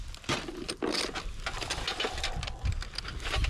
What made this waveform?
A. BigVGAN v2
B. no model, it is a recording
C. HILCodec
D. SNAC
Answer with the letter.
B